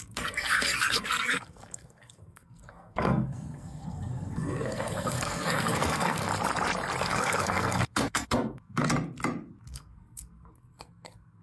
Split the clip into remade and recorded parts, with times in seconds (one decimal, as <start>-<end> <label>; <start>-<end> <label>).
0.0-6.3 remade; 6.3-7.0 recorded; 7.0-8.9 remade; 8.9-9.6 recorded; 9.6-11.4 remade